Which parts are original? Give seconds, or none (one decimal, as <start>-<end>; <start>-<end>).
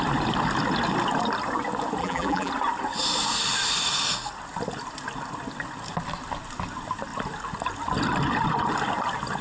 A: 0.0-2.0; 2.5-9.4